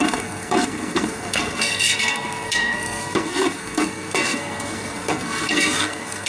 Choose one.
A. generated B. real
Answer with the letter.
A